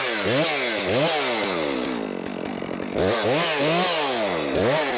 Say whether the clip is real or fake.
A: real